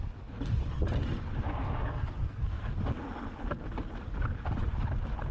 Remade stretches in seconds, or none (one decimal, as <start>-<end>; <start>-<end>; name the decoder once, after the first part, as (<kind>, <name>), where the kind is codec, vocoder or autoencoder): 1.6-2.7 (codec, SNAC)